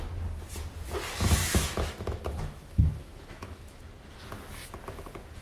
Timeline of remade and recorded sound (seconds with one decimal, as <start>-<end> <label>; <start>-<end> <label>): 0.0-1.4 recorded; 1.4-3.8 remade; 3.8-5.4 recorded